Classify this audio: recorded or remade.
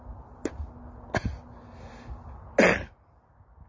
recorded